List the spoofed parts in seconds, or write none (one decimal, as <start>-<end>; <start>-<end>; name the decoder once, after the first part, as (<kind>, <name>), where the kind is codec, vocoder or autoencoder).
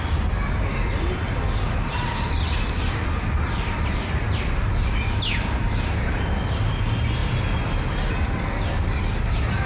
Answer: none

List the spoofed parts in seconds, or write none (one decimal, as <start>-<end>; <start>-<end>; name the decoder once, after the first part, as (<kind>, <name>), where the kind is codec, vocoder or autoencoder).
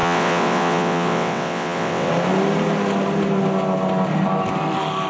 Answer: 0.0-2.1 (vocoder, WaveNeXt)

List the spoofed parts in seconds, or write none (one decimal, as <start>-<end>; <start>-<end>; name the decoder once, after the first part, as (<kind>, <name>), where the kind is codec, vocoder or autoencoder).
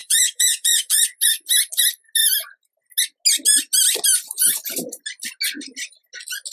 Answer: 0.0-1.0 (vocoder, Vocos)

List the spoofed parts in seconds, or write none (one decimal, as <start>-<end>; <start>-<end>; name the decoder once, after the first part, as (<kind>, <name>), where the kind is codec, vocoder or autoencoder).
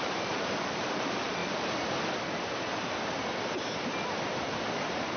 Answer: 0.0-1.4 (vocoder, BigVGAN v2); 4.5-5.2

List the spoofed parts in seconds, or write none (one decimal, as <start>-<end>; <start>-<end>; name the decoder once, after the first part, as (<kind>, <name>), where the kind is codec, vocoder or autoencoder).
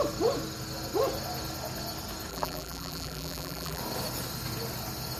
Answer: 2.3-3.8 (vocoder, BigVGAN v2)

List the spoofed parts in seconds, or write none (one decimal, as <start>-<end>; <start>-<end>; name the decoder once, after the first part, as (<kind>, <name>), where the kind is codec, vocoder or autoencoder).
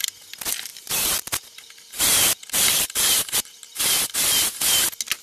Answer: 0.7-3.8 (vocoder, BigVGAN v2)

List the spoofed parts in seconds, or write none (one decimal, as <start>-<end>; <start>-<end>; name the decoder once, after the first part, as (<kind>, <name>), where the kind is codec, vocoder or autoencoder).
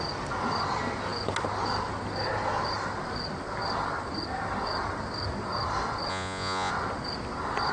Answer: 6.1-6.7 (vocoder, Vocos)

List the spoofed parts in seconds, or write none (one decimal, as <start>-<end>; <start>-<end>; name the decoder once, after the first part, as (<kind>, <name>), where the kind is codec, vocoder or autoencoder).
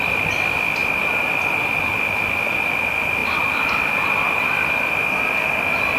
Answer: none